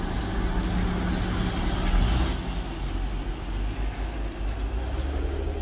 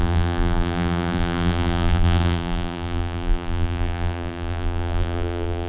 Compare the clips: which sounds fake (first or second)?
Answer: second